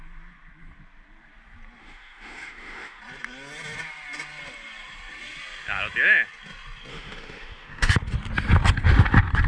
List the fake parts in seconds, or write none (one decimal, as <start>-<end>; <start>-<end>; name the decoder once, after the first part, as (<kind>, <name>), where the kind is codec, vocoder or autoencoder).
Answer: 1.8-3.0 (autoencoder, DAC-VAE); 6.9-7.9

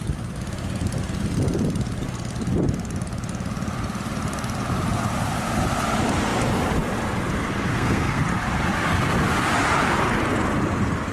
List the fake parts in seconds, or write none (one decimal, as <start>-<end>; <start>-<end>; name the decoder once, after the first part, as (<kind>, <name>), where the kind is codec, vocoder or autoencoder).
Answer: 7.7-8.2 (codec, SNAC)

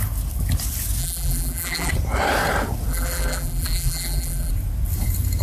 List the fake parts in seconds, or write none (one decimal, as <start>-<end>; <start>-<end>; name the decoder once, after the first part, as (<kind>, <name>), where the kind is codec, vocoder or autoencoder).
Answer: 1.0-1.9 (vocoder, BigVGAN v2); 2.9-4.5

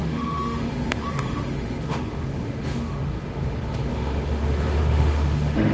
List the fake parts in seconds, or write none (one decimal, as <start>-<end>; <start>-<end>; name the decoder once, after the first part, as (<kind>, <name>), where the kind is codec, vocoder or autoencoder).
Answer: 0.0-5.7 (autoencoder, DAC-VAE)

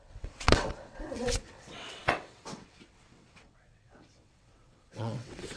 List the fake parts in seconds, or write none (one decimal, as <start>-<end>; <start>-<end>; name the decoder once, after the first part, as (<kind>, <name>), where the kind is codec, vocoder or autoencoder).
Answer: 0.0-5.6 (vocoder, WaveNeXt)

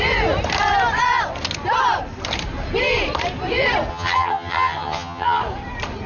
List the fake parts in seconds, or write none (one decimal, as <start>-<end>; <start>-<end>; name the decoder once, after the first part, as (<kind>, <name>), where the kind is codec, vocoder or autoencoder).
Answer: 3.9-5.4 (vocoder, HiFi-GAN)